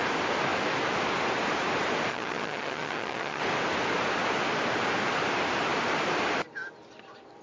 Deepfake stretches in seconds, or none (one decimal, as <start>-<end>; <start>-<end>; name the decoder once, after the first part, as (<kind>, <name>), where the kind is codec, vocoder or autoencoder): 2.1-3.4 (vocoder, HiFi-GAN)